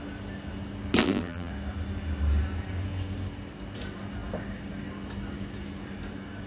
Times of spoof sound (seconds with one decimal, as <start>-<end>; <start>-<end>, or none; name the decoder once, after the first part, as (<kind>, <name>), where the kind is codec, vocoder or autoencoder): 1.0-1.5 (vocoder, BigVGAN v2)